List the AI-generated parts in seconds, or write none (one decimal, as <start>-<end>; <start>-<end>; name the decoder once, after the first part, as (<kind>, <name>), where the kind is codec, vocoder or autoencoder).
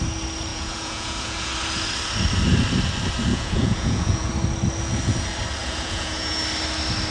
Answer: 0.5-1.5 (vocoder, Vocos); 3.3-4.3; 5.6-6.4